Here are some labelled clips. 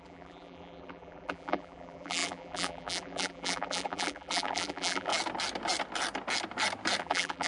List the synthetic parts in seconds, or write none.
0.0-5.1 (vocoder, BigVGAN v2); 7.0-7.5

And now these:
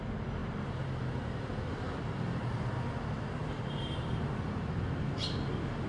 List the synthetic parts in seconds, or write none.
0.4-2.4 (vocoder, BigVGAN v2); 3.4-5.5

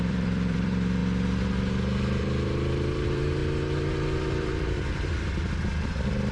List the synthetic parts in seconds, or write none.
0.0-1.0 (vocoder, BigVGAN v2); 2.2-3.4; 4.3-6.3

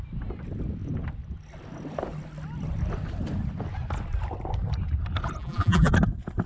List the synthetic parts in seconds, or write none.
5.4-5.9 (vocoder, BigVGAN v2)

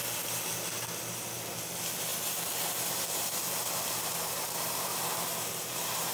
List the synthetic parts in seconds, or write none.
4.9-6.1 (vocoder, BigVGAN v2)

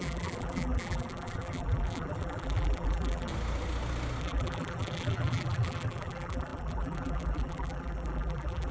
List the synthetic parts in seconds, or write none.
0.0-3.3 (vocoder, BigVGAN v2); 4.2-8.7

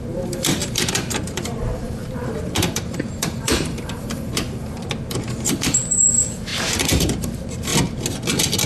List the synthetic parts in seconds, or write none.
0.0-7.7 (vocoder, BigVGAN v2)

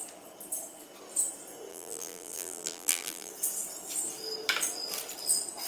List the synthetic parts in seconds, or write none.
1.7-3.3 (vocoder, BigVGAN v2)